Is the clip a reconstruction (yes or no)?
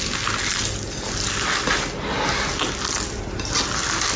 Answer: no